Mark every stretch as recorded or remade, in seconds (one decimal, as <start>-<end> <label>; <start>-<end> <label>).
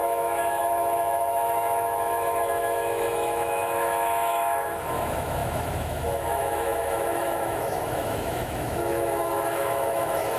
0.0-10.4 remade